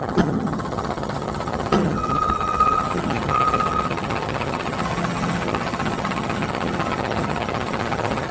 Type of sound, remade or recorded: remade